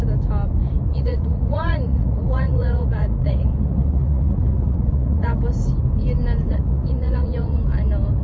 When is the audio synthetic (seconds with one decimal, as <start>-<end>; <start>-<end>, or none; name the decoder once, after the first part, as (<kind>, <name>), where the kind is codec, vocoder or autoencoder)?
0.9-5.4 (vocoder, Vocos); 6.5-7.6